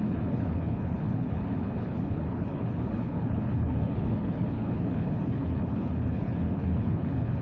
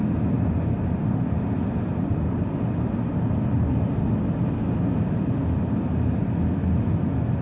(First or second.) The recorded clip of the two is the second